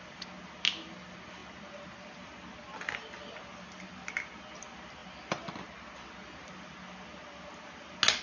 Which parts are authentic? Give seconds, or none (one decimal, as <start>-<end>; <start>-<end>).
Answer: 0.0-8.2